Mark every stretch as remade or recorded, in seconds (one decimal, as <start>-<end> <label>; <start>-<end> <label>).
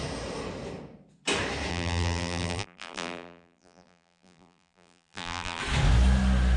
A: 0.0-1.7 recorded; 1.7-5.6 remade; 5.6-6.6 recorded